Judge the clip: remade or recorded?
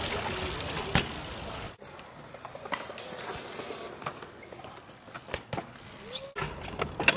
recorded